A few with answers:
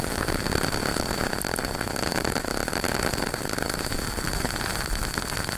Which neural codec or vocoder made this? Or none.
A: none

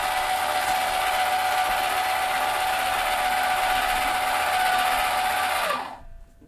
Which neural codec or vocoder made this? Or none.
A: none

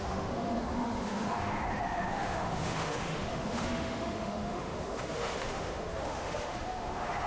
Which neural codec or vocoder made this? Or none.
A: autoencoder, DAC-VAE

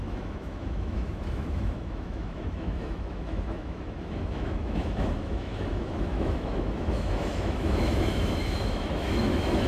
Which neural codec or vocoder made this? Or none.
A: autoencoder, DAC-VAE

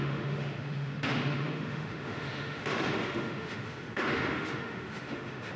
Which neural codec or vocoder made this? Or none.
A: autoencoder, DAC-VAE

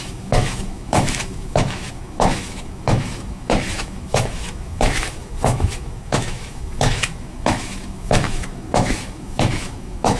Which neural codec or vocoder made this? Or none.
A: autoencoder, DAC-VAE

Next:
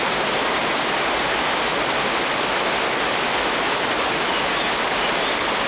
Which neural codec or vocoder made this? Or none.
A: none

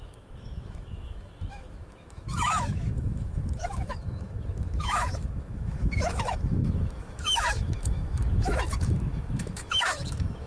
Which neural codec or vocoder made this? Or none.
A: autoencoder, DAC-VAE